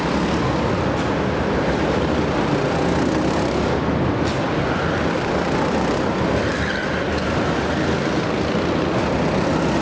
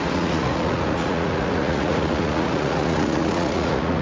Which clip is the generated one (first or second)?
second